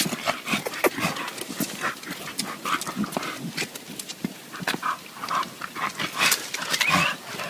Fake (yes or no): no